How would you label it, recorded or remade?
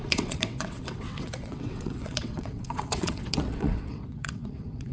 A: remade